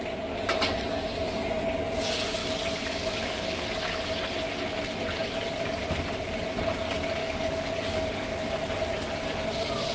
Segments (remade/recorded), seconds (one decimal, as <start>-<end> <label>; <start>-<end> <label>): 0.0-2.4 recorded; 2.4-3.7 remade; 3.7-7.2 recorded; 7.2-8.3 remade; 8.3-9.9 recorded